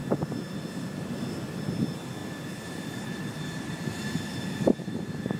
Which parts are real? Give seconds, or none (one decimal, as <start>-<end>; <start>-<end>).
0.0-5.4